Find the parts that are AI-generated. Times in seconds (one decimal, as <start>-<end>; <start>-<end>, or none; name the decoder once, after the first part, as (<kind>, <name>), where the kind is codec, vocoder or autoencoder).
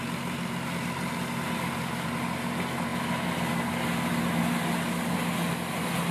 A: none